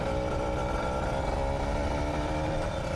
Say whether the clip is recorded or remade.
recorded